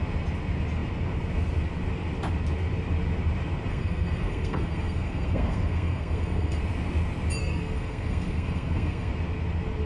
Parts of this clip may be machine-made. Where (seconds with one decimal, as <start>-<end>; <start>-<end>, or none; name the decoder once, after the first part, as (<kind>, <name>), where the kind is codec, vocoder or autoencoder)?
3.7-6.6 (codec, SNAC); 7.4-9.1